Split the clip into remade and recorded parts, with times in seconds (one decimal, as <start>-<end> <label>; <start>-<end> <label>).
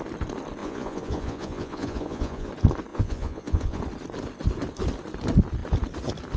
0.0-0.6 recorded; 0.6-2.5 remade; 2.5-2.9 recorded; 2.9-3.8 remade; 3.8-6.4 recorded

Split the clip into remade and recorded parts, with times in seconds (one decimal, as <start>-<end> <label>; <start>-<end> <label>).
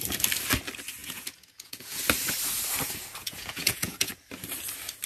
0.0-1.0 recorded; 1.0-2.0 remade; 2.0-3.2 recorded; 3.2-4.1 remade; 4.1-5.1 recorded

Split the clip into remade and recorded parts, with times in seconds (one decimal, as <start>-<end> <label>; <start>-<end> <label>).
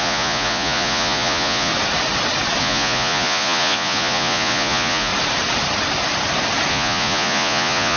0.0-1.7 remade; 1.7-2.6 recorded; 2.6-5.1 remade; 5.1-6.7 recorded; 6.7-8.0 remade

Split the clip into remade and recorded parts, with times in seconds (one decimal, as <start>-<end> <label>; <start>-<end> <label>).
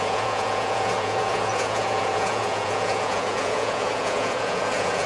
0.0-5.1 remade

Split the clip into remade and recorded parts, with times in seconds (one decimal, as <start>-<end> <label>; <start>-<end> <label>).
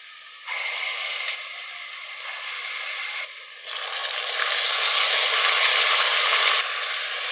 0.0-7.3 recorded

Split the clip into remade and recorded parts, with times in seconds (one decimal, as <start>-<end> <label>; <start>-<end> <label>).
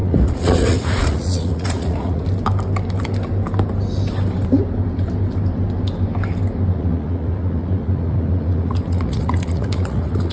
0.0-2.2 remade; 2.2-6.7 recorded; 6.7-10.3 remade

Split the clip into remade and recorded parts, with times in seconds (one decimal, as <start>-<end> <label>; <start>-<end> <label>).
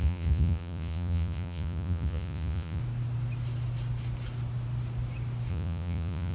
0.0-2.8 remade; 2.8-5.5 recorded; 5.5-6.3 remade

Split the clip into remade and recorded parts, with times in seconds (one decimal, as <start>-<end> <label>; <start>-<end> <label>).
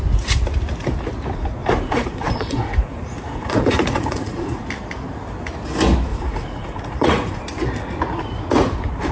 0.0-1.6 recorded; 1.6-4.7 remade; 4.7-6.1 recorded; 6.1-7.4 remade; 7.4-9.1 recorded